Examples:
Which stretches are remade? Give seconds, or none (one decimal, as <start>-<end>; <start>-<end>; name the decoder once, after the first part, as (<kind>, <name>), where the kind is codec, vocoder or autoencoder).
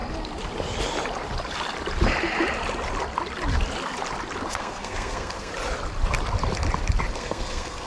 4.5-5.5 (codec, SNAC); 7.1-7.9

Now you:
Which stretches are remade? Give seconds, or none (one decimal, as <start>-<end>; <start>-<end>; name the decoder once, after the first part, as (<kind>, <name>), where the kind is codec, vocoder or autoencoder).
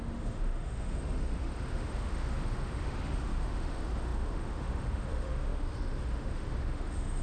0.0-7.2 (autoencoder, DAC-VAE)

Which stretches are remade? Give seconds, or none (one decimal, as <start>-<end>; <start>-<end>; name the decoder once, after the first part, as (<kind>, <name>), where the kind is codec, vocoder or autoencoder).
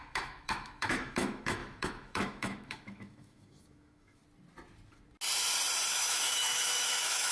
0.0-4.2 (autoencoder, DAC-VAE); 5.9-7.3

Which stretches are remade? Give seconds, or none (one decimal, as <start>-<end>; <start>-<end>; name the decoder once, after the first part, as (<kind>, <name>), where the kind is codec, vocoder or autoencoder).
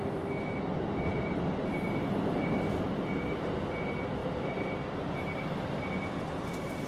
0.7-3.7 (vocoder, BigVGAN v2); 4.2-5.7